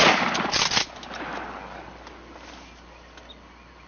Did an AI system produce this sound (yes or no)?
no